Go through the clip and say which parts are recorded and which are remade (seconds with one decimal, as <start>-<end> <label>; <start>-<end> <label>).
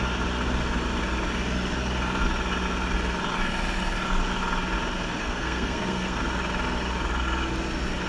0.0-5.2 recorded; 5.2-6.2 remade; 6.2-8.1 recorded